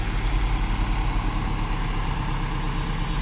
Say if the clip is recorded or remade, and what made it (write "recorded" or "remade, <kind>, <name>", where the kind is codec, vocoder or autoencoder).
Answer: recorded